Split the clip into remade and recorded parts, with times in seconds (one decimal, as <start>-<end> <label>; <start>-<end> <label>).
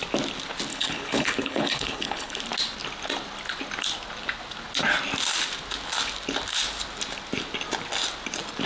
0.0-0.7 recorded; 0.7-2.4 remade; 2.4-8.7 recorded